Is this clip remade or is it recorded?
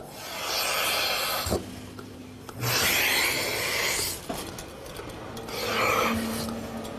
recorded